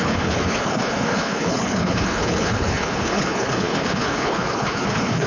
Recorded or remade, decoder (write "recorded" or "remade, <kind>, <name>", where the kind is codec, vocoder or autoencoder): remade, codec, HILCodec